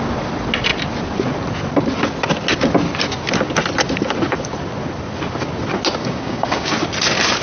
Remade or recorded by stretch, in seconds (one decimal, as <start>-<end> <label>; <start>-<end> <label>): 0.0-6.0 recorded; 6.0-6.7 remade; 6.7-7.4 recorded